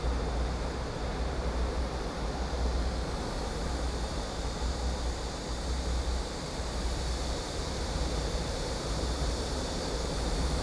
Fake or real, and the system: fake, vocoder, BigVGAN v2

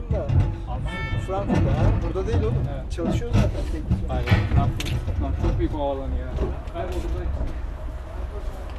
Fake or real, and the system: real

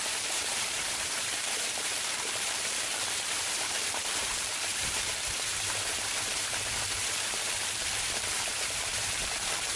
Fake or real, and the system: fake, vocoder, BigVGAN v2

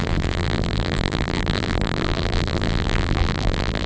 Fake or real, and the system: fake, vocoder, BigVGAN v2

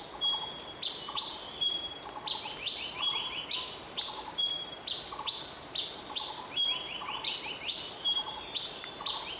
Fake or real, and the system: real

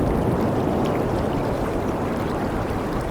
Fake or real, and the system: real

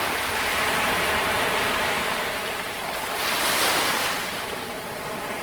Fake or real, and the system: fake, vocoder, BigVGAN v2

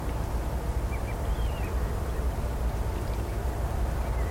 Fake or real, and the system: real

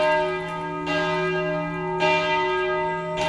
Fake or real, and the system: real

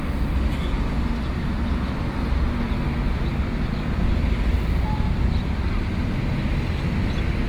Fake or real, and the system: real